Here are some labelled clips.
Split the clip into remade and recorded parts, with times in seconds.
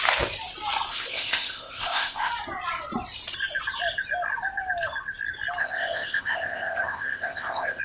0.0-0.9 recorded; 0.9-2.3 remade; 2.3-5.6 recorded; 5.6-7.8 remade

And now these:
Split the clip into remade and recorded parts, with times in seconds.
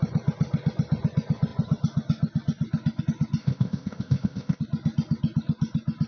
0.0-3.4 recorded; 3.4-4.6 remade; 4.6-6.1 recorded